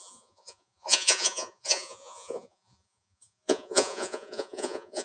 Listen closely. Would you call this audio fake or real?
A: fake